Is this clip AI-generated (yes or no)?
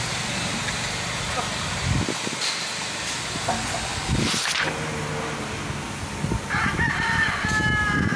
no